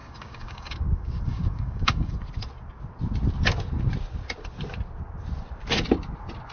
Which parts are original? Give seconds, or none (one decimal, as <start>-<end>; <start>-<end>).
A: 2.1-6.5